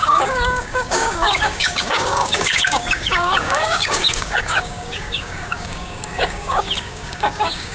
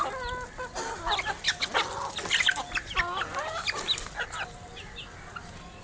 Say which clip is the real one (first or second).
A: second